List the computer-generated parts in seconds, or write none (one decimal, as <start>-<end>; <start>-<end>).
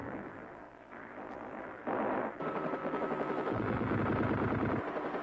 0.0-2.4; 2.8-4.0